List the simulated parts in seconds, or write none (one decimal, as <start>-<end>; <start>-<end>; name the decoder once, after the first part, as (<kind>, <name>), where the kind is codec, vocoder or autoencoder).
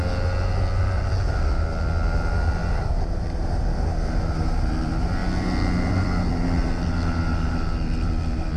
none